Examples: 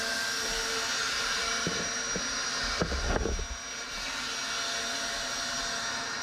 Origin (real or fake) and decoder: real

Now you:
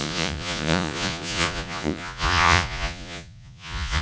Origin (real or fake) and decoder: fake, vocoder, Vocos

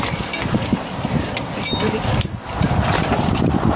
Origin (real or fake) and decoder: real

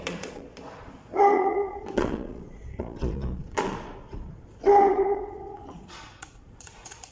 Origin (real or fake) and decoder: fake, vocoder, Vocos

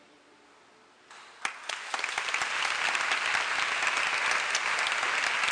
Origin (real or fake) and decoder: real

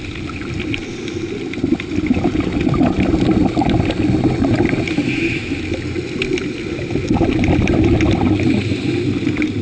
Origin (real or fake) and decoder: real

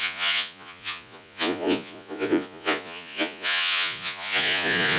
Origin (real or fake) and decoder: fake, vocoder, Vocos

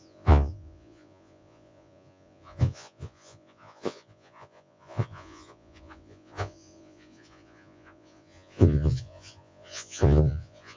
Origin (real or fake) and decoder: fake, vocoder, Vocos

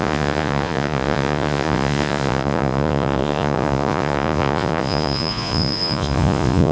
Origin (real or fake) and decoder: fake, vocoder, Vocos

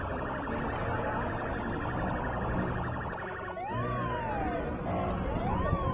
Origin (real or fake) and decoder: real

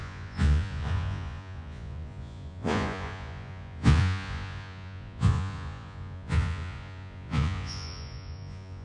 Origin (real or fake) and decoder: fake, vocoder, Vocos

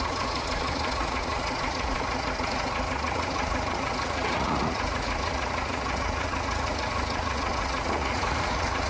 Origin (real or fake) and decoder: fake, vocoder, Vocos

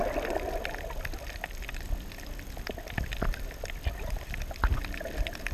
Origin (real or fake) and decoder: real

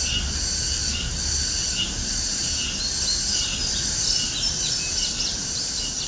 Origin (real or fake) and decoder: real